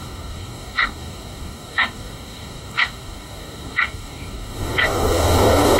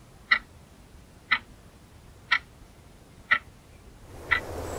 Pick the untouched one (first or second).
second